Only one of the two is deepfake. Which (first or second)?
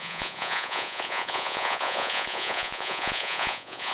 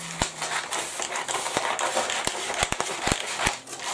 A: first